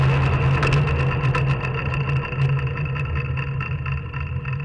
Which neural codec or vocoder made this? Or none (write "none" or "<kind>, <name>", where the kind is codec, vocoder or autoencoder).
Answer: none